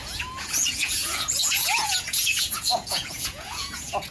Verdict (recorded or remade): remade